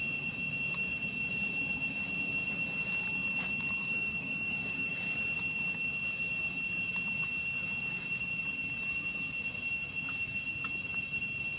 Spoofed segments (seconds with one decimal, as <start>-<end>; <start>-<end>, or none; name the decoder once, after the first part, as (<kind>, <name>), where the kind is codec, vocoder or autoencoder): 3.8-4.9 (codec, DAC)